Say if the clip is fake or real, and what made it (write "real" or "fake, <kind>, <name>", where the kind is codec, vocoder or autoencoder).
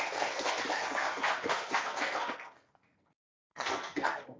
fake, codec, SNAC